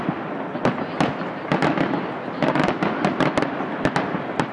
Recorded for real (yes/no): yes